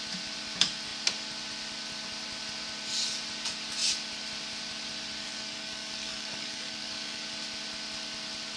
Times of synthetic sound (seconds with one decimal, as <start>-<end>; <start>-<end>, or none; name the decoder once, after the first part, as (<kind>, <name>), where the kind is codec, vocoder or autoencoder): 5.2-7.2 (codec, DAC)